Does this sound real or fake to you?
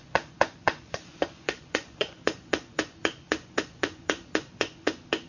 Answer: fake